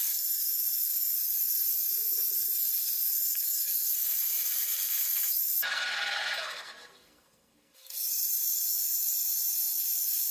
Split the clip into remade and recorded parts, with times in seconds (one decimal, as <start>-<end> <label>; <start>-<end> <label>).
0.0-10.3 remade